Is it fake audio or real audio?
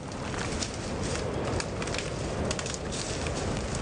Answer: real